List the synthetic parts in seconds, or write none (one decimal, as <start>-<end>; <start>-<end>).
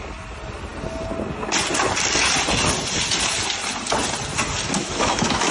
4.8-5.5